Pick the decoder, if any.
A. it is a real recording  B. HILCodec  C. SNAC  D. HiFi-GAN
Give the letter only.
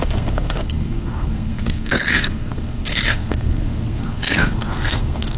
C